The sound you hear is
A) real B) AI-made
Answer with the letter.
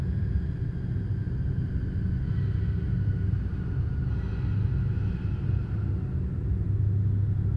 A